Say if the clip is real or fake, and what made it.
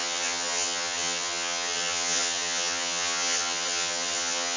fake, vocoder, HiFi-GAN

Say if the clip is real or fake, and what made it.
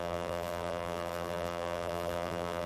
fake, vocoder, BigVGAN v2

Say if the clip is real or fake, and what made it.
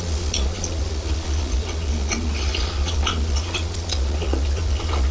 fake, vocoder, Vocos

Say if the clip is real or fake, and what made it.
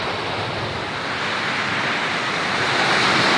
real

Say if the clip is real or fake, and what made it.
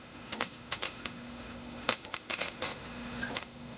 fake, autoencoder, DAC-VAE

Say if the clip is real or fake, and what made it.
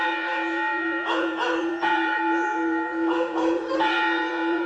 fake, vocoder, Vocos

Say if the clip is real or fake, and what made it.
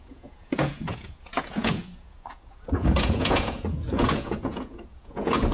fake, vocoder, Vocos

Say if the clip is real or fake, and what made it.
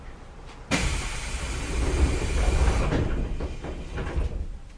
real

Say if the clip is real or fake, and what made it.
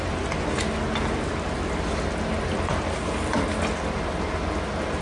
real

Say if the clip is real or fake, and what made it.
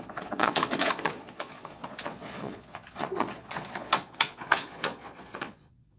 fake, vocoder, Vocos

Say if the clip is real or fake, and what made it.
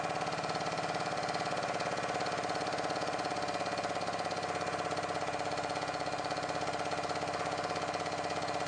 real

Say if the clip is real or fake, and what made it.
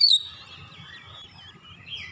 real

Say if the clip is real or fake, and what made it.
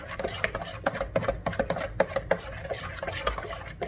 real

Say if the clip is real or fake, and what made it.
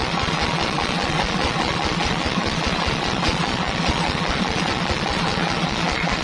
fake, vocoder, Vocos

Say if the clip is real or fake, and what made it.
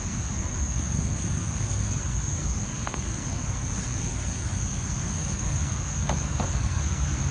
fake, codec, SNAC